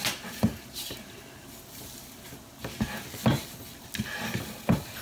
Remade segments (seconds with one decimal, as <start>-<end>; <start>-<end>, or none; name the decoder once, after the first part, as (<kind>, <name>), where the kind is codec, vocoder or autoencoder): none

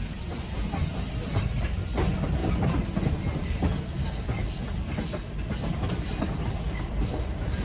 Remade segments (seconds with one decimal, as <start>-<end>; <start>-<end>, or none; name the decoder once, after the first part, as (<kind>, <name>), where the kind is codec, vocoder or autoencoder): none